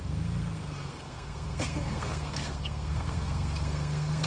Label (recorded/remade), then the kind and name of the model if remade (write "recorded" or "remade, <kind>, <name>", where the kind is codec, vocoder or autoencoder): remade, codec, SNAC